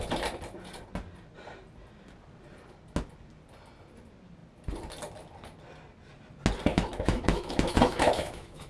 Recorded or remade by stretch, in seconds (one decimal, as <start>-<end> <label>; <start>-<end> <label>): 0.0-6.7 recorded; 6.7-8.7 remade